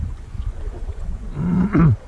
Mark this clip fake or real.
fake